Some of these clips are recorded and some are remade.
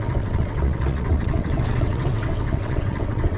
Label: remade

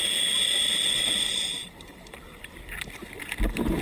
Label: recorded